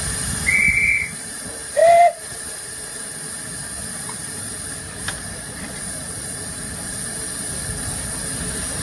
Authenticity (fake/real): fake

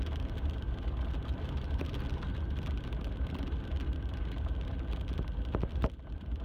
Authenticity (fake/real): real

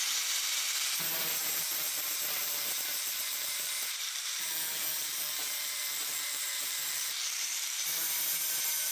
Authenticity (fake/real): fake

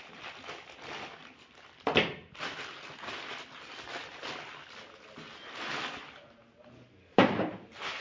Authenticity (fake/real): real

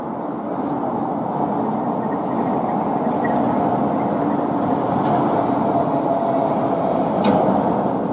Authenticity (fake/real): real